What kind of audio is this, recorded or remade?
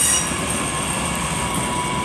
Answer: recorded